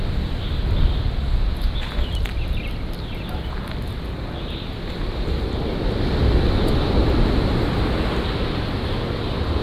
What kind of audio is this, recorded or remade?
recorded